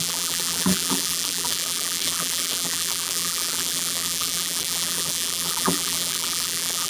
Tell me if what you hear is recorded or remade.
remade